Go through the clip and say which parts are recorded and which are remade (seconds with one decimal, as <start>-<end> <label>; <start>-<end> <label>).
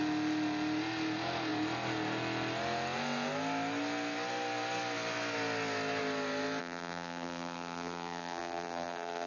0.0-6.6 recorded; 6.6-9.3 remade